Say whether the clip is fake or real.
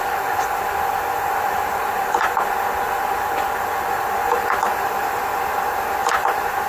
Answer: real